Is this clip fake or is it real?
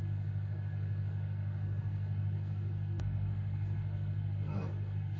fake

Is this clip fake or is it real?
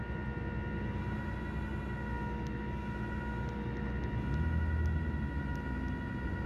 real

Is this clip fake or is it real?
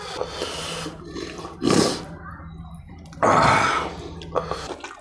real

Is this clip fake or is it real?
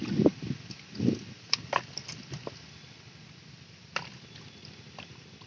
real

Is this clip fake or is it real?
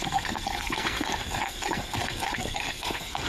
fake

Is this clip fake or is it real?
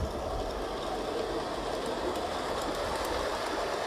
real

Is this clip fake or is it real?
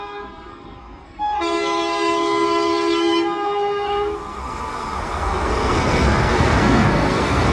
fake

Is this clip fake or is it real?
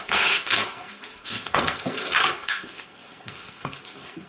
fake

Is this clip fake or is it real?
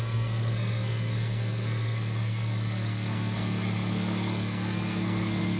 fake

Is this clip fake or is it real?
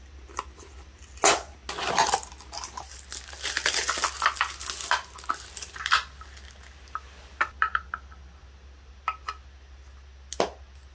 real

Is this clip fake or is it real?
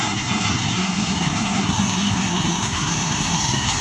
fake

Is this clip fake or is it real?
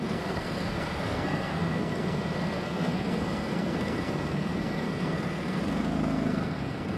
fake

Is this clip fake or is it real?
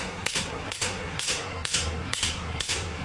fake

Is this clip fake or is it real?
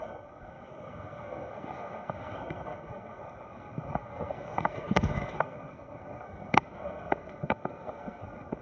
fake